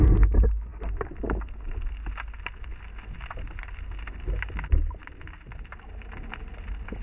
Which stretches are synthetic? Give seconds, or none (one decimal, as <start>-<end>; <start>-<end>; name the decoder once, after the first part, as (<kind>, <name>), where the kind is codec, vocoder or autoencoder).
none